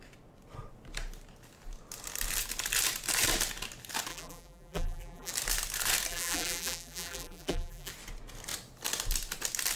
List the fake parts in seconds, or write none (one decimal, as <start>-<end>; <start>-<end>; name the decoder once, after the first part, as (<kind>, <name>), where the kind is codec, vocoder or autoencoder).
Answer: 4.1-5.3 (vocoder, BigVGAN v2); 6.1-7.9